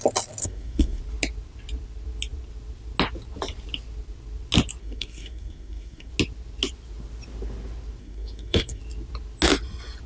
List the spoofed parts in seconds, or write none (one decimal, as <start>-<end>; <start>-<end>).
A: 0.4-1.0; 4.8-6.1; 8.0-8.8

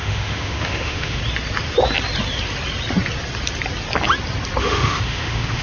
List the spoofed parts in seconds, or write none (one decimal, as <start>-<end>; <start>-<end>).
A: 0.0-1.2; 4.6-5.6

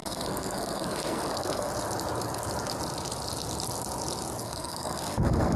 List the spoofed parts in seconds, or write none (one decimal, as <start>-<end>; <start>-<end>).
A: 0.0-1.7; 4.4-5.6

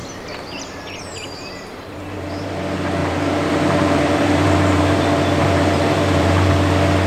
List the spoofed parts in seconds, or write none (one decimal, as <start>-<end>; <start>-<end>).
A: 0.0-2.5; 3.0-6.5

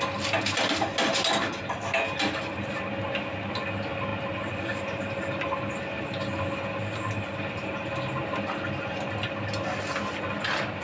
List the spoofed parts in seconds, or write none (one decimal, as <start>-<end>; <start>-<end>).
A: none

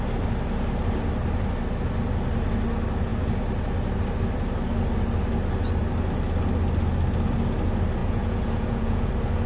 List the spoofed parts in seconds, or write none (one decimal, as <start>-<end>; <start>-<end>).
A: 8.0-9.1